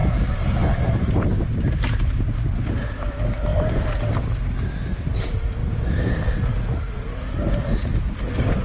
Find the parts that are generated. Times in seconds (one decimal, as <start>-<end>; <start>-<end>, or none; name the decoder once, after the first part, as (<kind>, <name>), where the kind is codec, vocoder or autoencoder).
0.0-2.6 (vocoder, BigVGAN v2)